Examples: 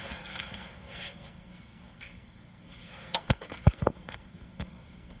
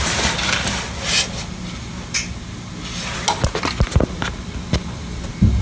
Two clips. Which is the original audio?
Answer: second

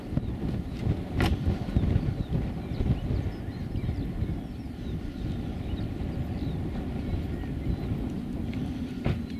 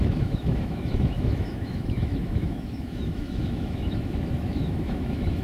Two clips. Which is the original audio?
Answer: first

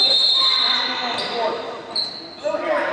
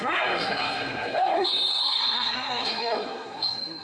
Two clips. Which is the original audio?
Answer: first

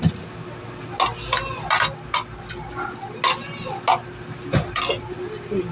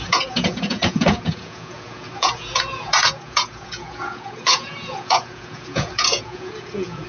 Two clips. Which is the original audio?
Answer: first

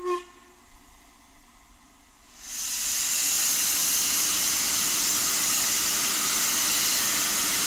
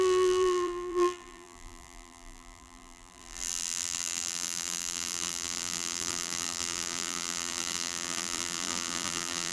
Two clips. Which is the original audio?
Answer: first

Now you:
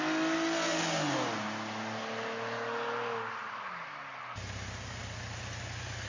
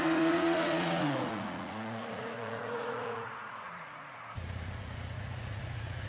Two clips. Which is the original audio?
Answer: first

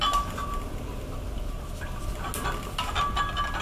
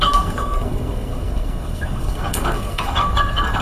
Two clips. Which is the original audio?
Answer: first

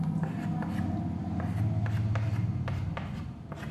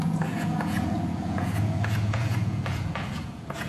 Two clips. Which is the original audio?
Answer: first